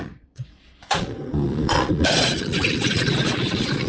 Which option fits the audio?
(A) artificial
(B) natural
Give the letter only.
A